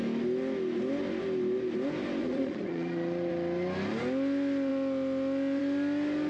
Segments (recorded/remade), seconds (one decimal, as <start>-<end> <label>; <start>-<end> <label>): 0.0-2.2 recorded; 2.2-3.3 remade; 3.3-6.3 recorded